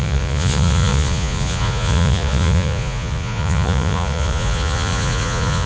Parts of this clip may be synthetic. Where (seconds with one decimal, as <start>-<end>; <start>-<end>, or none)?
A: 0.0-5.7